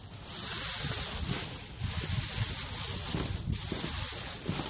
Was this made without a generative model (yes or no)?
yes